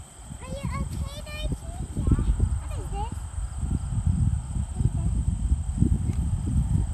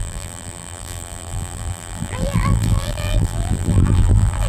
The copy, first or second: second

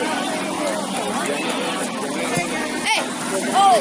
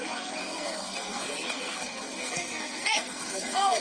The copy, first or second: second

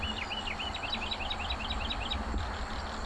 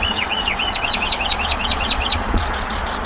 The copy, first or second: second